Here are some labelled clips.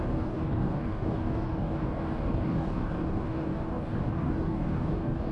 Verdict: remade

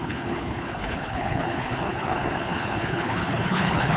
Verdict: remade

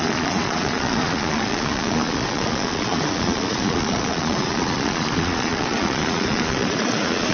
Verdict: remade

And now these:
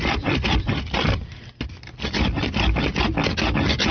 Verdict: recorded